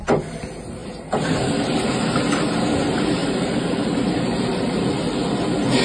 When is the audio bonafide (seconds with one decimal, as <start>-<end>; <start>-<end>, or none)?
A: 0.0-3.2; 5.3-5.8